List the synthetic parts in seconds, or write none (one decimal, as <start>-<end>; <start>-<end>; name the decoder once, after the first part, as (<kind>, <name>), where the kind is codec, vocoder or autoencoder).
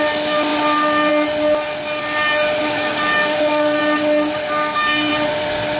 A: 2.6-3.8 (codec, DAC); 4.4-5.1